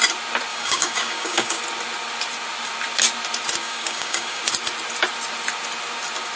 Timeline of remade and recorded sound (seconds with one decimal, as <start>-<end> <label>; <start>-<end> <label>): 0.0-0.5 recorded; 0.5-1.6 remade; 1.6-3.6 recorded; 3.6-4.4 remade; 4.4-6.4 recorded